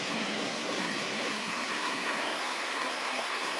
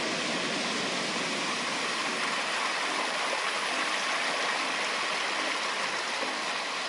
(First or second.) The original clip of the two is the second